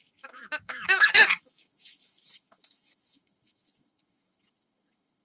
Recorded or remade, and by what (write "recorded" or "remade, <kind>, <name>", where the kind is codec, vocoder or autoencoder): remade, autoencoder, DAC-VAE